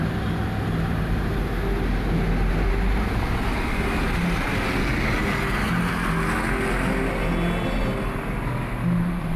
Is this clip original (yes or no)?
yes